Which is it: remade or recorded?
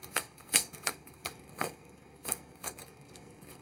remade